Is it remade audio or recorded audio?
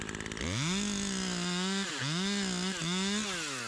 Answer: recorded